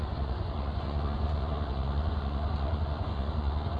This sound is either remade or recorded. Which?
remade